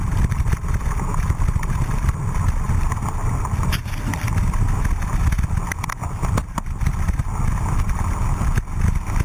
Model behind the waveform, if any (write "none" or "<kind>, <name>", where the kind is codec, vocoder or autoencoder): none